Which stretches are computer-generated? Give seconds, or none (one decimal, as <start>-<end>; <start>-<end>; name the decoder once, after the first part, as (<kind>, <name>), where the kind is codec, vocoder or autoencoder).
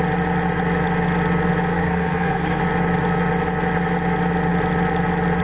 1.7-2.6 (codec, SNAC)